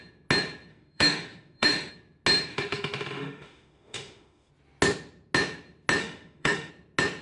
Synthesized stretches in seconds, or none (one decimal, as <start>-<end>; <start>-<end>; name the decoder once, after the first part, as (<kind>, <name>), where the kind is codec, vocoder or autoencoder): 0.7-1.9 (autoencoder, DAC-VAE); 2.5-4.5; 6.0-6.7